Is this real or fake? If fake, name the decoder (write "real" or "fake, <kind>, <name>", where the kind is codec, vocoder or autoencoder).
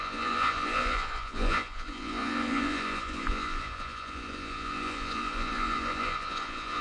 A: fake, vocoder, Vocos